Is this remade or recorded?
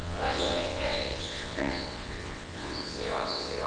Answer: remade